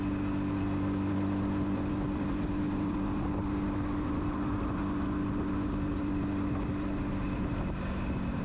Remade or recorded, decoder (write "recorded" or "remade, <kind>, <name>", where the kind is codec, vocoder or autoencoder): recorded